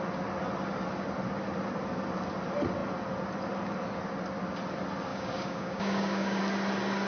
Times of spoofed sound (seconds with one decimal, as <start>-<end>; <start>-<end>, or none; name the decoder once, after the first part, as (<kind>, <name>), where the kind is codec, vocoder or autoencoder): 5.1-6.4 (codec, DAC)